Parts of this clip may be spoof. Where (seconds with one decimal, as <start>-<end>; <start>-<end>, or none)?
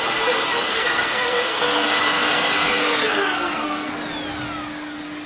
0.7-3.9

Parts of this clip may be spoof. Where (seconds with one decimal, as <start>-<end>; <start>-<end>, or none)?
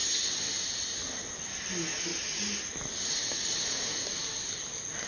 none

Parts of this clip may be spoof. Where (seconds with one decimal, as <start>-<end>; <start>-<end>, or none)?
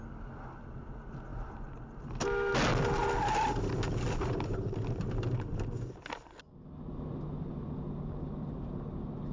none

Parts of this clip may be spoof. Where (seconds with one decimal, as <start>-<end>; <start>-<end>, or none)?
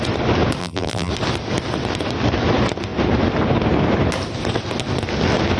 0.6-1.1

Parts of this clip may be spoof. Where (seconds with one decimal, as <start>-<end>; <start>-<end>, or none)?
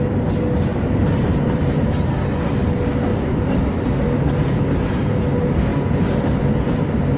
0.7-2.1; 3.1-5.2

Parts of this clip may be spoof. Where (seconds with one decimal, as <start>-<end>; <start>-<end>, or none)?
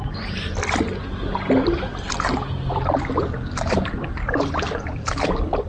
none